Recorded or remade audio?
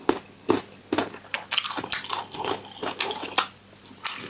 recorded